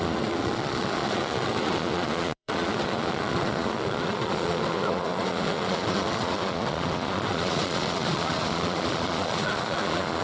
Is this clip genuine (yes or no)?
no